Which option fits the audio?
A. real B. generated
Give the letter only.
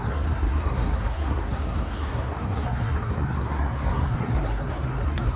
B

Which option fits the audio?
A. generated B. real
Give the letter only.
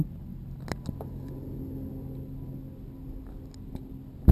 B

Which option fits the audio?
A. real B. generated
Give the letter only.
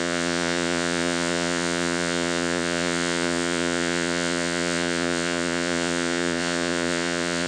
B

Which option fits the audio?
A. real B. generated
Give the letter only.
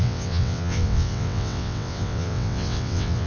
B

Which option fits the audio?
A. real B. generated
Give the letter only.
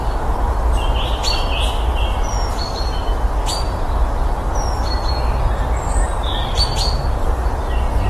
A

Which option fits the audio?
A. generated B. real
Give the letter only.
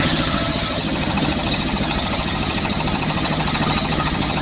A